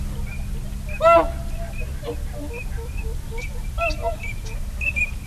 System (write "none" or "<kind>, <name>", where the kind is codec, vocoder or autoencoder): none